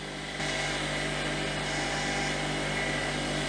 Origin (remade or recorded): recorded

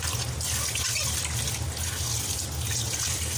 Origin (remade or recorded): recorded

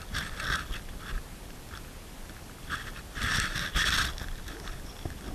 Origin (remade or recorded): recorded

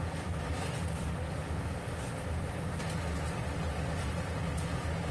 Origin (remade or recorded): recorded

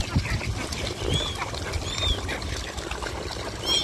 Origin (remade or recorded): recorded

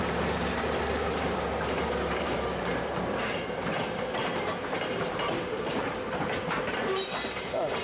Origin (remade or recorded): remade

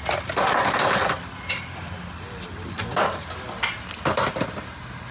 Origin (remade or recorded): recorded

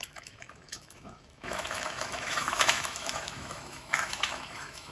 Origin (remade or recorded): remade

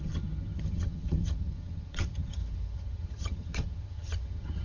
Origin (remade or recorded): remade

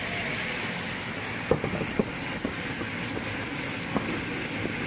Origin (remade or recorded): recorded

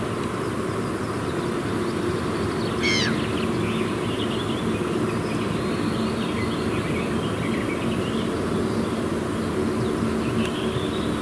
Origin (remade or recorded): recorded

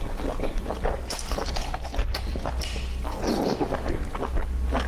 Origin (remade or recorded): recorded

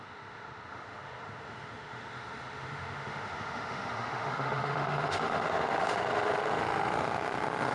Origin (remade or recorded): remade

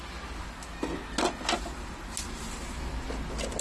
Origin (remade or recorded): recorded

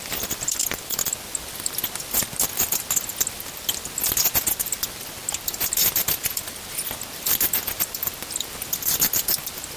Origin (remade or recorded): recorded